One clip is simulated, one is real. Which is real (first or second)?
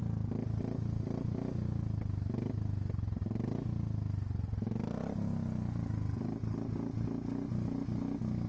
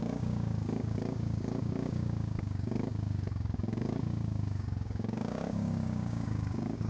first